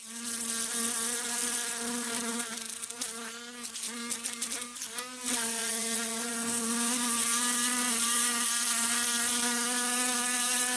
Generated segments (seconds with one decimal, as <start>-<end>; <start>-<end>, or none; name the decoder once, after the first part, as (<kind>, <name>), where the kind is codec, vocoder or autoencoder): 5.6-6.3 (vocoder, Vocos)